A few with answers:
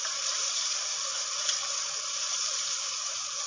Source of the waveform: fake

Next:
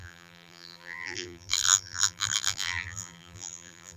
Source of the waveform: fake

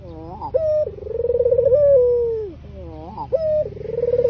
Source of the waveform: real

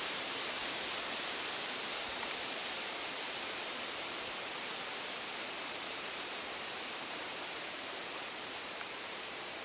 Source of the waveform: fake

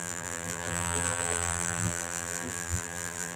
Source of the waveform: fake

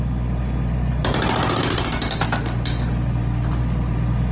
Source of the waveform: real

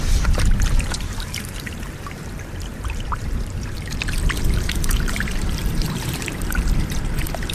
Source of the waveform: fake